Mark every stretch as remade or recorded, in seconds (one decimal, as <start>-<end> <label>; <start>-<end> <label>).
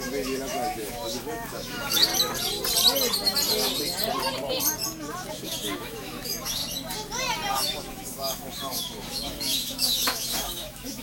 0.0-2.1 remade; 2.1-5.3 recorded; 5.3-6.6 remade; 6.6-7.5 recorded; 7.5-11.0 remade